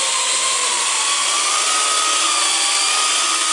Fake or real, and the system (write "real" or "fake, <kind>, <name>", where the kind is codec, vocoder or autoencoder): real